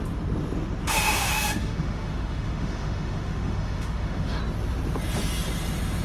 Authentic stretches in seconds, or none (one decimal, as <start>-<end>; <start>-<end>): 0.0-0.8; 4.4-6.0